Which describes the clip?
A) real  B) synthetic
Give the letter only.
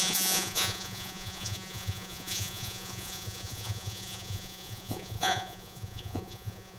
B